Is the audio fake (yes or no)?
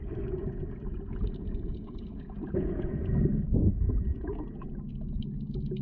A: yes